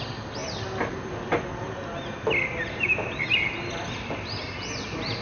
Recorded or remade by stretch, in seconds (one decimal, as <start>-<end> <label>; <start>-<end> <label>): 0.0-5.2 recorded